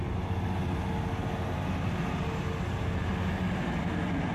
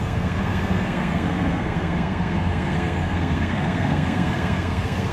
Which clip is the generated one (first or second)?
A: second